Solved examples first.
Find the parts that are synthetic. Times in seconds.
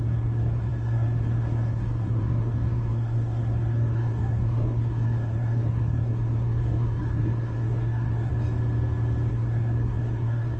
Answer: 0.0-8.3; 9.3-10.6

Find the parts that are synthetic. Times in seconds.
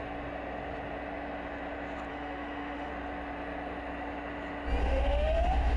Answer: 2.1-2.9; 4.8-5.8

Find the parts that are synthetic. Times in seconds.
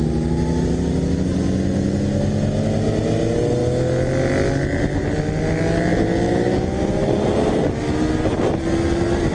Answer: none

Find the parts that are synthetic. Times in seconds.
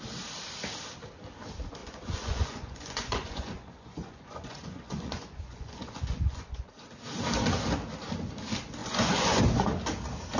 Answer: 1.8-6.7; 8.8-9.4